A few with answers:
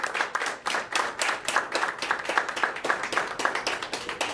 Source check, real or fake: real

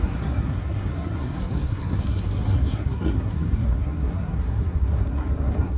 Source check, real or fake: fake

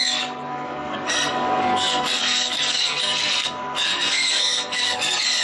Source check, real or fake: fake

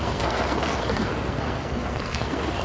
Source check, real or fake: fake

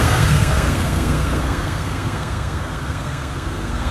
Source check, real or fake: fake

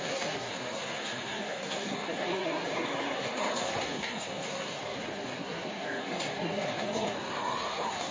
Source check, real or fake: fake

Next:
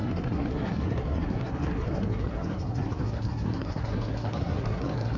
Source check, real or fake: fake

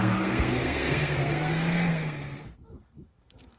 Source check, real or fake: fake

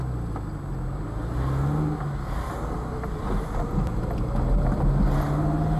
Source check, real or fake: real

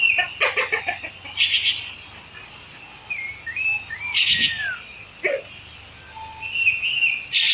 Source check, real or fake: real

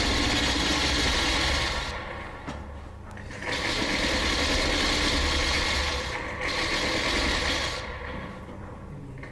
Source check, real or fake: real